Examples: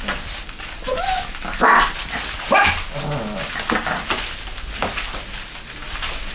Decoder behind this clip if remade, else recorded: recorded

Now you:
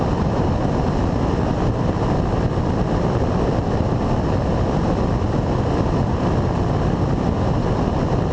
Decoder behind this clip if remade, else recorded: recorded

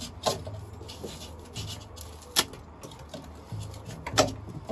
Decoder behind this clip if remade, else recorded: recorded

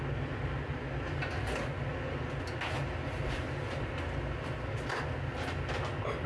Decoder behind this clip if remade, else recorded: recorded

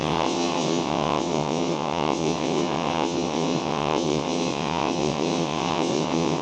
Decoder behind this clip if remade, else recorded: remade, vocoder, WaveNeXt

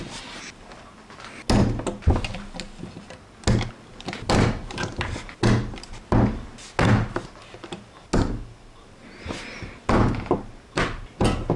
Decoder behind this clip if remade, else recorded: recorded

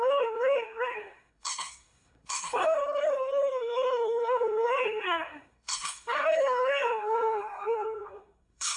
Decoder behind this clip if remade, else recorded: remade, codec, SNAC